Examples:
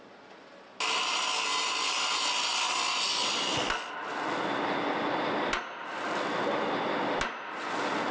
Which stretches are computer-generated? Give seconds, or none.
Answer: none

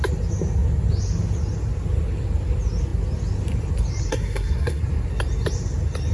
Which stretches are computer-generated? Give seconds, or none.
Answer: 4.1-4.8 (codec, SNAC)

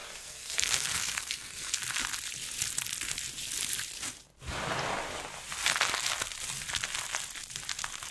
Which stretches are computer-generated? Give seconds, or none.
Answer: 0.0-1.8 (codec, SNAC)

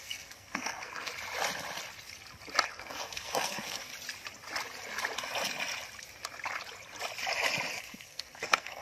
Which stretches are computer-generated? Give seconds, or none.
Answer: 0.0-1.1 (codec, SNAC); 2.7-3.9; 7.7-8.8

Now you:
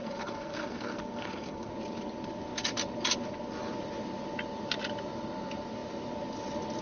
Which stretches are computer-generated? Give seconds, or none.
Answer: 0.0-1.7 (codec, SNAC)

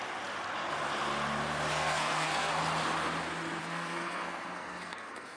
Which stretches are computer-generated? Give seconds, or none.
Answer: 1.7-2.5 (codec, SNAC); 3.6-5.4

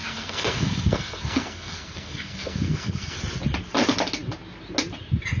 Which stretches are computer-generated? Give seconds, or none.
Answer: 0.0-3.2 (codec, SNAC)

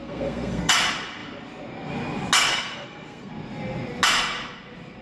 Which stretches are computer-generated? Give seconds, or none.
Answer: 0.0-0.7 (codec, SNAC); 2.5-3.3